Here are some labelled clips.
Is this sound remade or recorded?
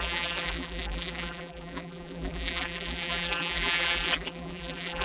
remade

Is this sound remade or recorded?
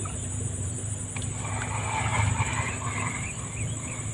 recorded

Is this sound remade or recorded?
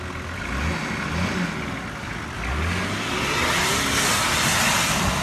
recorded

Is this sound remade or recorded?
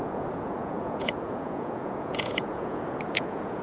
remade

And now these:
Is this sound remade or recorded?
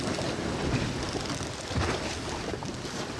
recorded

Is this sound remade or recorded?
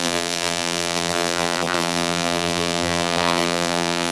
remade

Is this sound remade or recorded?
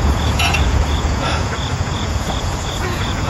remade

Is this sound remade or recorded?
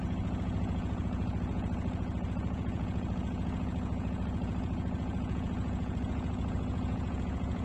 remade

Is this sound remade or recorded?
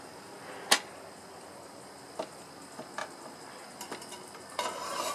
recorded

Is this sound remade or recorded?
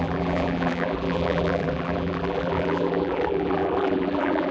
remade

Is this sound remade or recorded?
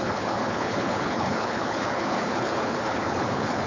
remade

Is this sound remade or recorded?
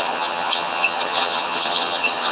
remade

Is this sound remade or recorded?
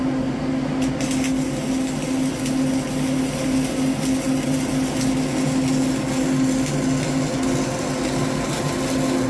recorded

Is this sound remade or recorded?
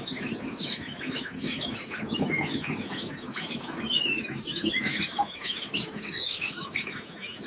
remade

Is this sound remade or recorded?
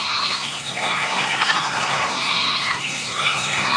remade